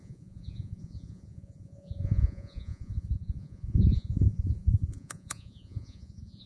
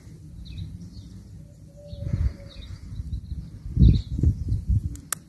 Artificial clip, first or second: first